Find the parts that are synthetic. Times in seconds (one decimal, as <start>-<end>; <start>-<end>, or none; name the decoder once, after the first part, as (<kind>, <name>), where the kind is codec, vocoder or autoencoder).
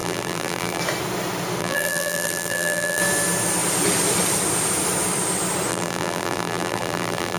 0.0-0.8 (vocoder, BigVGAN v2); 1.6-3.0; 5.7-7.4